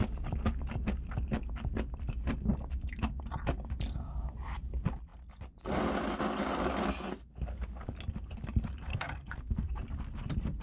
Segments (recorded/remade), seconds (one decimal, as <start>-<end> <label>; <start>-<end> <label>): 0.0-8.9 recorded; 8.9-9.8 remade; 9.8-10.6 recorded